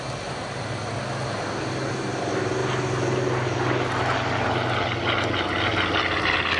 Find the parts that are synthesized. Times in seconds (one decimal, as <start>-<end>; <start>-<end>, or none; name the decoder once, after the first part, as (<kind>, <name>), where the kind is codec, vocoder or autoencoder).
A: none